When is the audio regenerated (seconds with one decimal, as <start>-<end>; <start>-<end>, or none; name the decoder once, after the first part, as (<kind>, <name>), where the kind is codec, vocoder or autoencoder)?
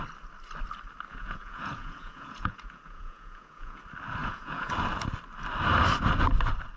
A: 1.1-3.8 (vocoder, Vocos); 4.2-4.7